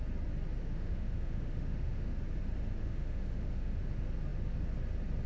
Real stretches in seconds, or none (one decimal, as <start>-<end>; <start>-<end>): 0.0-0.6; 2.2-2.8; 3.8-5.3